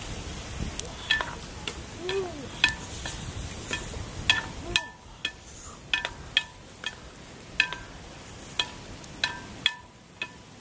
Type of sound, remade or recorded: recorded